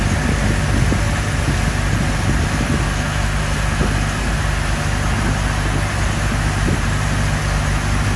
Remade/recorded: recorded